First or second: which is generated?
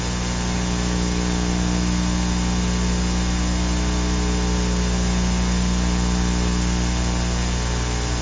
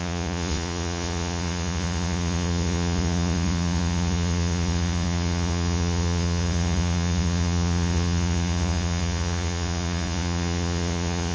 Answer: second